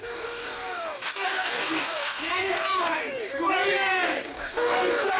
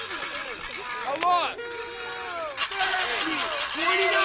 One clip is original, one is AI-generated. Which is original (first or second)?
second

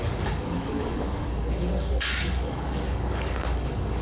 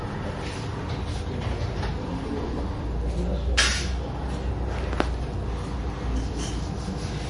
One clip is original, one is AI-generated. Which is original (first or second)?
second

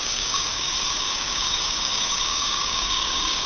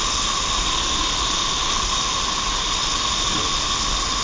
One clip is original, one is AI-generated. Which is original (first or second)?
second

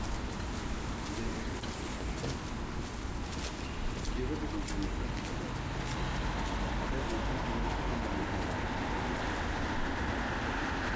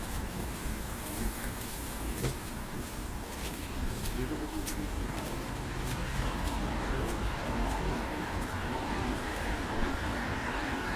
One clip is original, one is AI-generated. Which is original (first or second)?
first